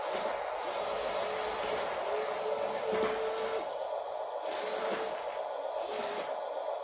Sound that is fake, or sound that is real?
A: real